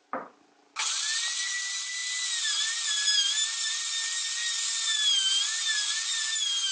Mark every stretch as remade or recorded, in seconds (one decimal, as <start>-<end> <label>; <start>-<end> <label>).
0.0-6.7 recorded